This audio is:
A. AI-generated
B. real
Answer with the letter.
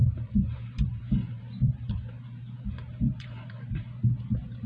A